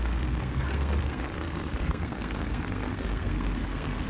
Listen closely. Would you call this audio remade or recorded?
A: remade